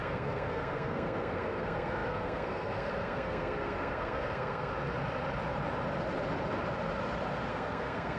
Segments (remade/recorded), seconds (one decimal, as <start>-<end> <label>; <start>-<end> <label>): 0.0-4.7 remade; 4.7-7.5 recorded; 7.5-8.2 remade